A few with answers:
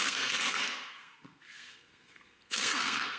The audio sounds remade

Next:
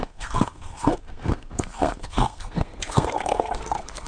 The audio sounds remade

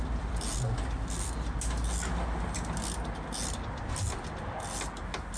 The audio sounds recorded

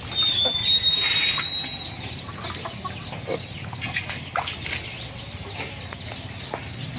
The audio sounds recorded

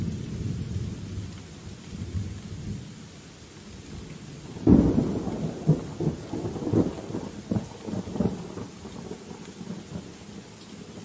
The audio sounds recorded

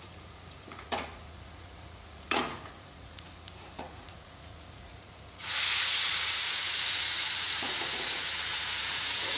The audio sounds remade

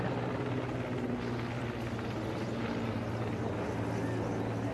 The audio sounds recorded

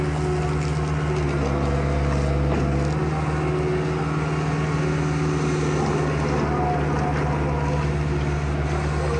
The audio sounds recorded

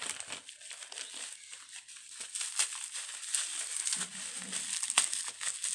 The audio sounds recorded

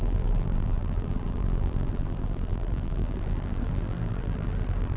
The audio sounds remade